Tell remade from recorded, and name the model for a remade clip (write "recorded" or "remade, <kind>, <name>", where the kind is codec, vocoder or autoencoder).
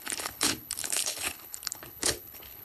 remade, codec, HILCodec